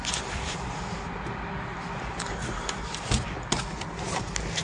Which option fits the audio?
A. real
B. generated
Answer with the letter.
A